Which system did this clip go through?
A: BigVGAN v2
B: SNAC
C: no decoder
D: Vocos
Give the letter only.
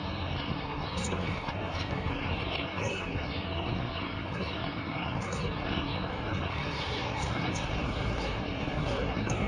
B